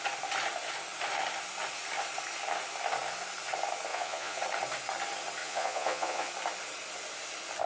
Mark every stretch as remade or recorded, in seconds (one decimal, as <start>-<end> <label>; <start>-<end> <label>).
0.0-3.9 recorded; 3.9-4.4 remade; 4.4-5.4 recorded; 5.4-6.3 remade; 6.3-7.7 recorded